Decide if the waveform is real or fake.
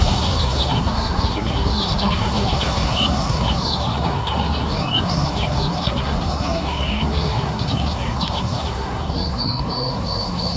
fake